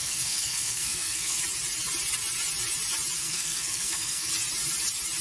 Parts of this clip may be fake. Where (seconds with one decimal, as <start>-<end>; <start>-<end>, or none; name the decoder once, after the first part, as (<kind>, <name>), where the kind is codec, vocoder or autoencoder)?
0.0-1.4 (codec, SNAC); 3.2-4.3